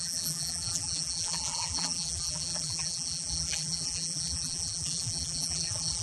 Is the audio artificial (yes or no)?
yes